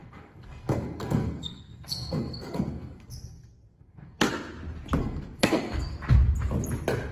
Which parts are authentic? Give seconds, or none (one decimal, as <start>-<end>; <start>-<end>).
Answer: 4.3-5.0; 5.9-7.1